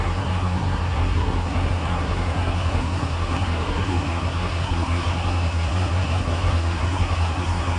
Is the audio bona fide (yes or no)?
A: no